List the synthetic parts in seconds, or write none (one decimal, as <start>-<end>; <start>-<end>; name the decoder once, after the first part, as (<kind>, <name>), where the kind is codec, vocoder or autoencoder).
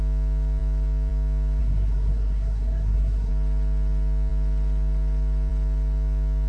1.6-3.3 (codec, SNAC)